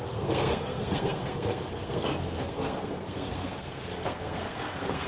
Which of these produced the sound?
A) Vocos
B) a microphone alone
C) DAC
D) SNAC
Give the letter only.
D